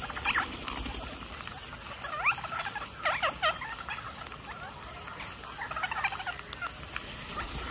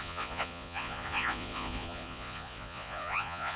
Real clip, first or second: first